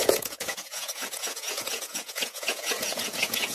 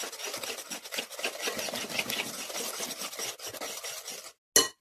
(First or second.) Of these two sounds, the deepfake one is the first